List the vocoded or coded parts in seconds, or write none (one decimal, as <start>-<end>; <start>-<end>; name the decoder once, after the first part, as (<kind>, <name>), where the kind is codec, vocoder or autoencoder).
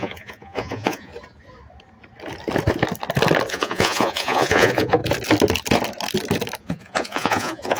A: 0.0-1.1 (vocoder, Vocos); 3.5-5.0; 6.6-7.8